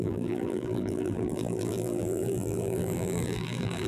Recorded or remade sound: remade